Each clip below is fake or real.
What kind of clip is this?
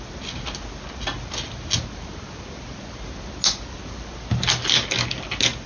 real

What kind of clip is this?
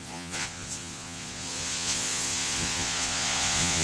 fake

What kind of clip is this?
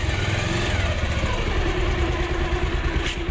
real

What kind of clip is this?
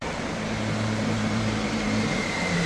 fake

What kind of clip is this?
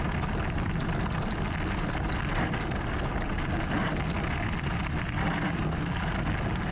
real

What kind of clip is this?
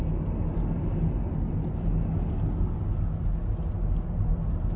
real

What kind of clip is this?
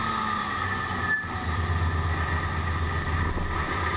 real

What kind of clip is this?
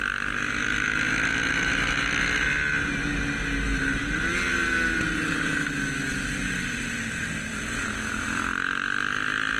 real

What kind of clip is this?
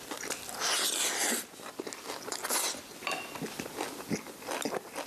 real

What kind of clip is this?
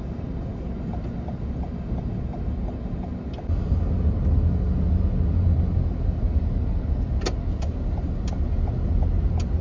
real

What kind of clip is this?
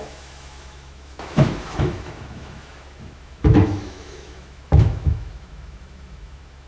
fake